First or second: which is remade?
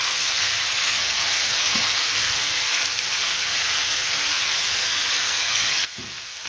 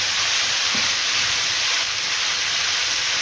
first